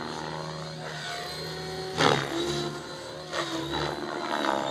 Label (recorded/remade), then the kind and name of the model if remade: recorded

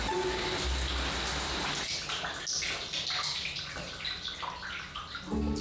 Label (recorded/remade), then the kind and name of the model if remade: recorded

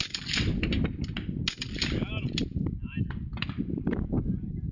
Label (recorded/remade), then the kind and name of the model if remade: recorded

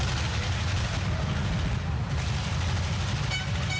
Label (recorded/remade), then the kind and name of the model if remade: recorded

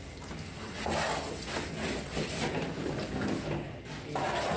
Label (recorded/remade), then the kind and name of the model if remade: recorded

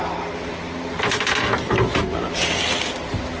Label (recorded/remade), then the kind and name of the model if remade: recorded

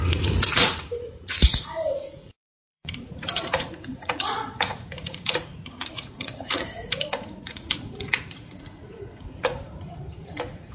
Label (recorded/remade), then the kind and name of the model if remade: remade, vocoder, Vocos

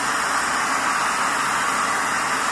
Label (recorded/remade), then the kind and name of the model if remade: recorded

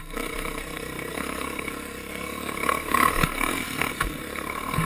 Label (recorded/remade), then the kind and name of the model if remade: remade, codec, SNAC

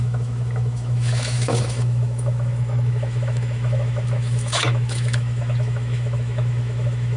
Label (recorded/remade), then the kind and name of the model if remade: remade, autoencoder, DAC-VAE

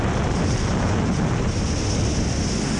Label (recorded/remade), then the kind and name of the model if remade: recorded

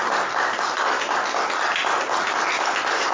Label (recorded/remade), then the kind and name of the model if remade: recorded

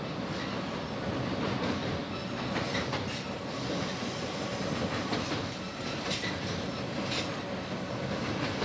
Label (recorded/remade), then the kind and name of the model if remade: recorded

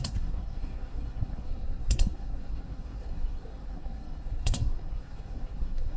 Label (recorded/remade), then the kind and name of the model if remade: remade, codec, SNAC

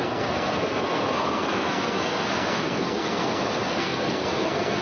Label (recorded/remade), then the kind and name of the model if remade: remade, codec, SNAC